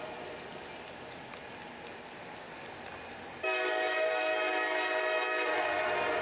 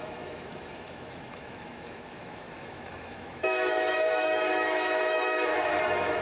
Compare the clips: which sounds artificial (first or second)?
second